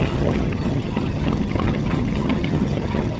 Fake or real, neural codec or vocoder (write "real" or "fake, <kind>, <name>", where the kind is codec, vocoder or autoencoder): fake, vocoder, HiFi-GAN